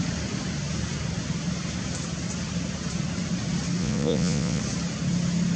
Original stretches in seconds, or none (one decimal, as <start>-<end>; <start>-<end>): 0.0-3.8; 4.6-5.6

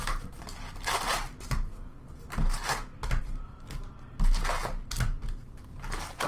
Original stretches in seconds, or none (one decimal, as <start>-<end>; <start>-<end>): 0.0-6.3

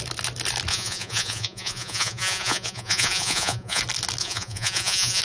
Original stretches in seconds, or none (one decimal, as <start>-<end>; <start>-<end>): 0.0-0.7; 3.8-4.2

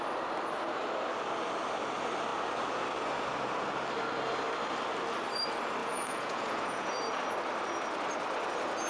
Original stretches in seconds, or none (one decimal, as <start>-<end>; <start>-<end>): 0.0-5.8; 6.9-8.9